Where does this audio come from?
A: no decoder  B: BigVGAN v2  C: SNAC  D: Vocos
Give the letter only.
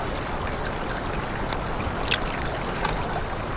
A